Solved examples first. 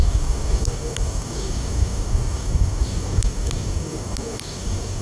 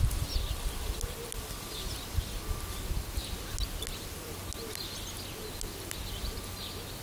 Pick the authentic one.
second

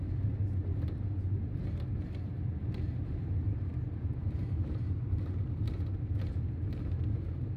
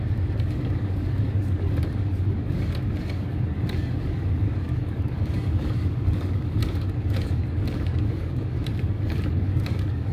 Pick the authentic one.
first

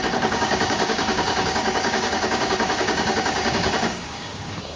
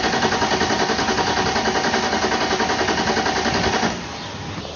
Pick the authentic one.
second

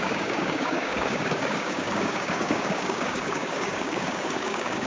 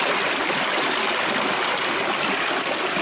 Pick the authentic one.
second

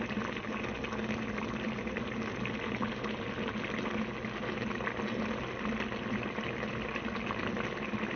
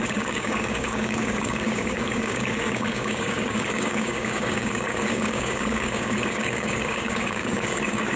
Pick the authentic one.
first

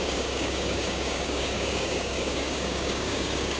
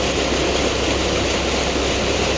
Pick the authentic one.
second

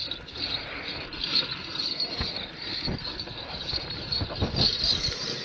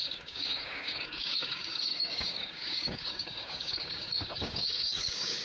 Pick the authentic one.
first